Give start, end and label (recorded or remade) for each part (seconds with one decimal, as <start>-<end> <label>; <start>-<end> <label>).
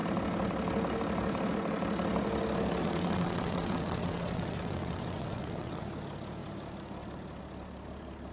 0.0-2.8 recorded; 2.8-5.8 remade; 5.8-8.3 recorded